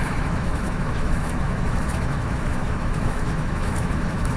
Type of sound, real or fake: fake